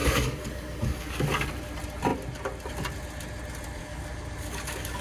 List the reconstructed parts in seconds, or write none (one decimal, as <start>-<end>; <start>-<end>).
0.0-1.5; 3.8-5.0